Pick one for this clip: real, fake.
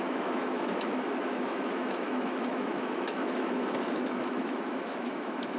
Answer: fake